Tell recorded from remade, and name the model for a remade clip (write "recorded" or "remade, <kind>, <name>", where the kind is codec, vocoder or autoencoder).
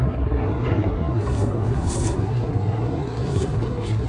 remade, codec, SNAC